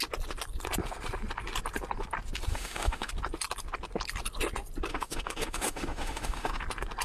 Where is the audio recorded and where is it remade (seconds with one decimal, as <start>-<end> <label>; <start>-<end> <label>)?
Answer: 0.0-2.5 recorded; 2.5-3.1 remade; 3.1-4.9 recorded; 4.9-6.6 remade; 6.6-7.0 recorded